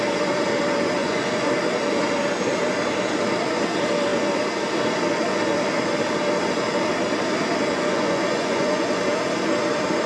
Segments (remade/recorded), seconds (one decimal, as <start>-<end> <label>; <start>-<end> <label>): 0.0-1.0 recorded; 1.0-1.5 remade; 1.5-7.7 recorded; 7.7-9.0 remade; 9.0-10.1 recorded